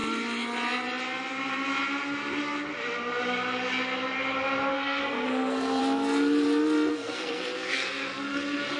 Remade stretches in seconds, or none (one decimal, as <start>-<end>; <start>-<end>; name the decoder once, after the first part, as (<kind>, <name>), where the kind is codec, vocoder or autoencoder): 4.7-5.8 (codec, SNAC); 6.9-8.8